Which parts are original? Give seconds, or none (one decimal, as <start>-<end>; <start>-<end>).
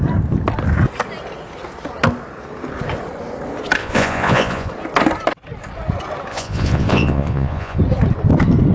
0.0-3.8; 4.7-6.3; 7.8-8.7